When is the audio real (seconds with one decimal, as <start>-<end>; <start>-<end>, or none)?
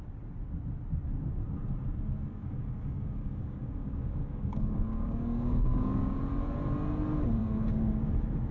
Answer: 0.0-2.3; 6.2-7.4; 8.0-8.5